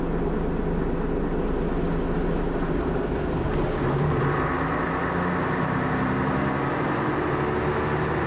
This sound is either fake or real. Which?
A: real